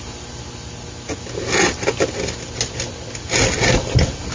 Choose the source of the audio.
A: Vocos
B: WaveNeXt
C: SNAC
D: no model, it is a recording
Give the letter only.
D